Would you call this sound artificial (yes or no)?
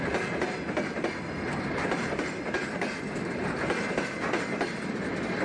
no